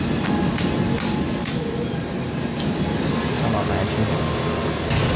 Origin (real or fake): real